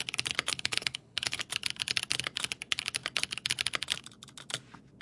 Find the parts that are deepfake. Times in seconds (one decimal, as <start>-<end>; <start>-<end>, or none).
0.5-1.4